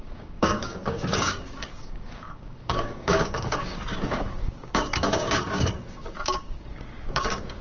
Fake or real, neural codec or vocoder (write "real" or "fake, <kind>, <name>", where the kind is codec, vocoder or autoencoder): fake, codec, DAC